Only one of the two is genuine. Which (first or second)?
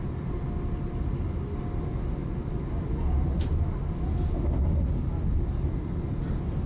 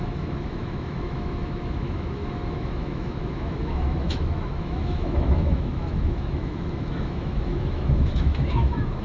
first